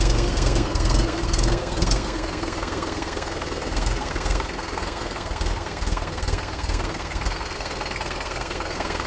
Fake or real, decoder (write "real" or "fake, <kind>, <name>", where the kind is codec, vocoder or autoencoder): fake, codec, SNAC